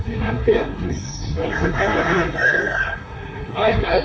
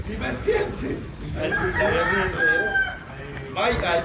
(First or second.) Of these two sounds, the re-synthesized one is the first